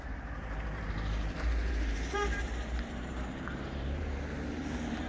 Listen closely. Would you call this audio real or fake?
fake